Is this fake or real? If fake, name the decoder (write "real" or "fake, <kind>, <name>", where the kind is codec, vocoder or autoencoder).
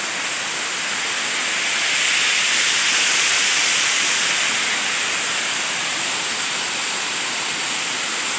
real